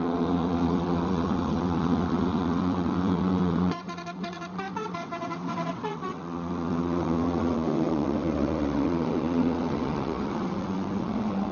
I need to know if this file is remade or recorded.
remade